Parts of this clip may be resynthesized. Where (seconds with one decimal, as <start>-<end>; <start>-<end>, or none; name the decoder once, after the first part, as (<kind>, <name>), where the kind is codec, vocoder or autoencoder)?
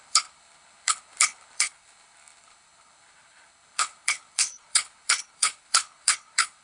0.0-6.6 (codec, HILCodec)